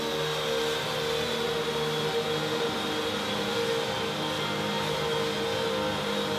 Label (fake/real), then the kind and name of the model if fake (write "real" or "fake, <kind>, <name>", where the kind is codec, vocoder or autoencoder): real